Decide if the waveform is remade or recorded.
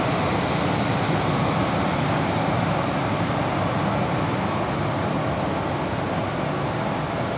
recorded